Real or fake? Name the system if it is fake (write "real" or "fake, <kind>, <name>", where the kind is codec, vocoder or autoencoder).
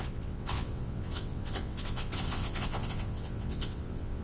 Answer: fake, vocoder, WaveNeXt